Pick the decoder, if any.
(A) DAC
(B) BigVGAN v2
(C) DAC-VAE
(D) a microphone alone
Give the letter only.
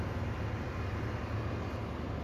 D